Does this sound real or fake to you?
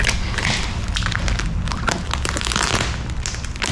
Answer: real